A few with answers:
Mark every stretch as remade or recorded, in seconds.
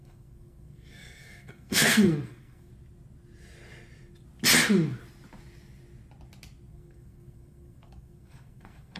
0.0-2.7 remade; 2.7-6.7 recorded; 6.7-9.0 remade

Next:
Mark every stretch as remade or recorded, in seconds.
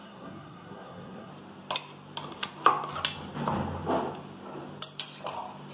0.0-1.3 remade; 1.3-5.7 recorded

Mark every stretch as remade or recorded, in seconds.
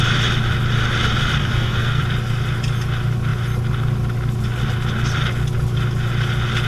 0.0-1.4 recorded; 1.4-2.0 remade; 2.0-6.7 recorded